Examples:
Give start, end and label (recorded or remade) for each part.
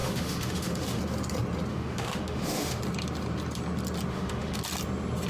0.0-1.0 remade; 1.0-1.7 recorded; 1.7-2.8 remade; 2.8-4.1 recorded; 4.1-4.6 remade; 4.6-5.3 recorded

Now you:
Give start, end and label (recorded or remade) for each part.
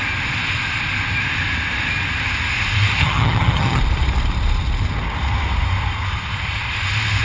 0.0-3.0 recorded; 3.0-3.8 remade; 3.8-7.2 recorded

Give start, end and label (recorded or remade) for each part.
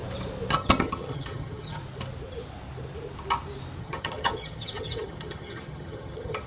0.0-0.5 recorded; 0.5-1.8 remade; 1.8-3.8 recorded; 3.8-6.5 remade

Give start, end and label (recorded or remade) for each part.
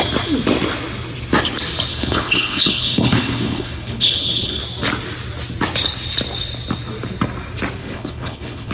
0.0-1.9 recorded; 1.9-4.6 remade; 4.6-7.8 recorded; 7.8-8.7 remade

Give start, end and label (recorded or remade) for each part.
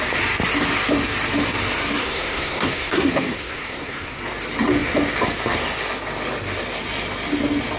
0.0-2.0 recorded; 2.0-4.2 remade; 4.2-7.8 recorded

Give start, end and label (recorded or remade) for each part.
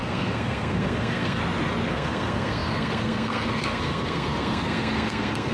0.0-1.4 remade; 1.4-1.9 recorded; 1.9-5.5 remade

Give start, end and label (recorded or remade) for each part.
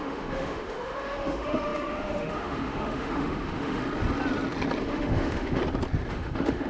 0.0-3.8 remade; 3.8-4.8 recorded; 4.8-5.6 remade; 5.6-6.1 recorded; 6.1-6.7 remade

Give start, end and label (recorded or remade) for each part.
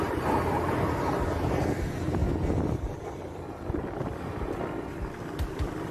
0.0-5.9 recorded